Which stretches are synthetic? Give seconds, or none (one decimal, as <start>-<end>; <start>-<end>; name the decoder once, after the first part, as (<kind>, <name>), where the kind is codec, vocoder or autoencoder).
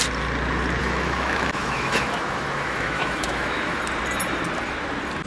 0.8-3.8 (autoencoder, DAC-VAE)